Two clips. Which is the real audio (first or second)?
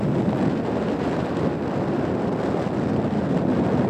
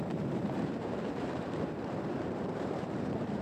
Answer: first